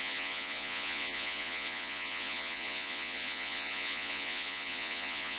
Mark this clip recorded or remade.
remade